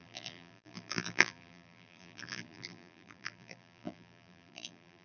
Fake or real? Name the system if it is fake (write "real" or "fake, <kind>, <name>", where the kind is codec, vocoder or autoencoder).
fake, vocoder, BigVGAN v2